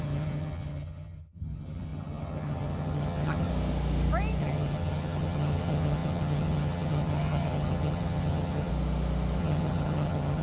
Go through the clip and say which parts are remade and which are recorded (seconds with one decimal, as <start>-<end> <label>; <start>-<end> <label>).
0.0-3.5 remade; 3.5-4.4 recorded; 4.4-8.7 remade; 8.7-9.4 recorded; 9.4-10.4 remade